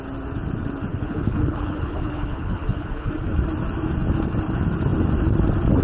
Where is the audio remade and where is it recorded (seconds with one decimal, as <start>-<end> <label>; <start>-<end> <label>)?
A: 0.0-0.9 recorded; 0.9-3.1 remade; 3.1-5.8 recorded